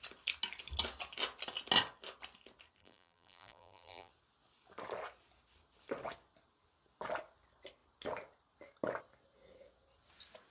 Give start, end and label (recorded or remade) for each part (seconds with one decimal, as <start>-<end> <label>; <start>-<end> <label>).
0.0-2.8 recorded; 2.8-4.1 remade; 4.1-10.5 recorded